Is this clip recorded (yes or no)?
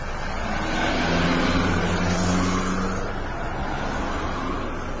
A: yes